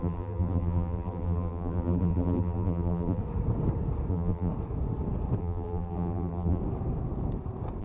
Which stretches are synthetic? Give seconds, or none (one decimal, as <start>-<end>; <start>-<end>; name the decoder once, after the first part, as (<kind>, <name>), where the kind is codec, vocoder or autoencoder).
0.0-3.2 (vocoder, BigVGAN v2); 4.1-4.5; 5.4-6.6